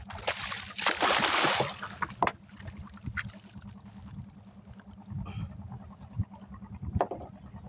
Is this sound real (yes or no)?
yes